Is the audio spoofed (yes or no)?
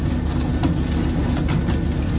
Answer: no